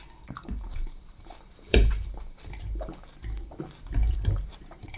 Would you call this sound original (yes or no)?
no